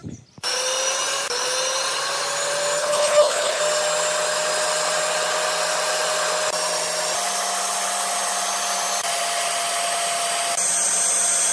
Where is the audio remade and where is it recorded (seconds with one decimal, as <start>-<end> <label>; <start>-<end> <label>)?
0.0-2.8 recorded; 2.8-3.6 remade; 3.6-11.5 recorded